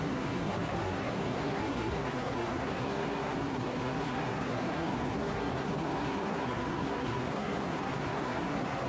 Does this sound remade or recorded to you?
remade